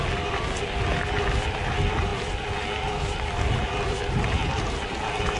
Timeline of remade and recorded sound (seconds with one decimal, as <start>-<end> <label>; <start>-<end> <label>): 0.0-5.4 recorded